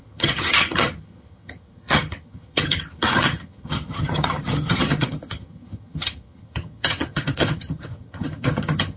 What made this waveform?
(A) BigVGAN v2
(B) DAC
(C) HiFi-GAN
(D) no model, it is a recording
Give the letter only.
C